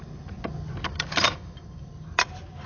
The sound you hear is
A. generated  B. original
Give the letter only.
B